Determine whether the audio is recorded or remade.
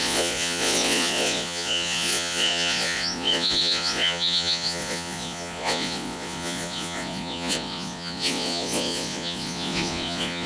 remade